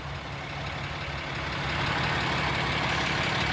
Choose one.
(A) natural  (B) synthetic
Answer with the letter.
A